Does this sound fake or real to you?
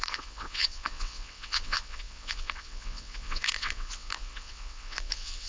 fake